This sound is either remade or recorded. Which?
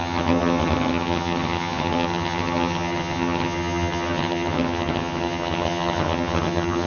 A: remade